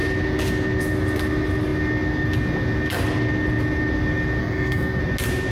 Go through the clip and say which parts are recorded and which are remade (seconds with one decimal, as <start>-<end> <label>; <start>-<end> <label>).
0.0-4.4 recorded; 4.4-5.0 remade; 5.0-5.5 recorded